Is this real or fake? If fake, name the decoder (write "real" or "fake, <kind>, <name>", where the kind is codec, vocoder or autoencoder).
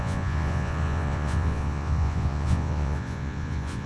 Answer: fake, vocoder, Vocos